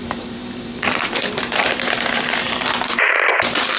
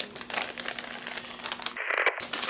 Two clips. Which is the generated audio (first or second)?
first